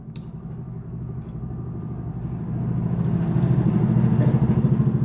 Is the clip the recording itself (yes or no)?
yes